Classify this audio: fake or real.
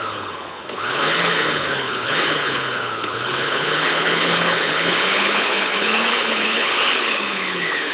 fake